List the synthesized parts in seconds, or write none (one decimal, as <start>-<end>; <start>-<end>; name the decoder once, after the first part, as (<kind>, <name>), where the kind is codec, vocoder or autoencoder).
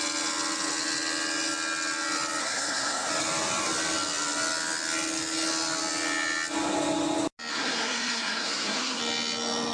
2.4-3.1 (codec, SNAC); 7.5-9.0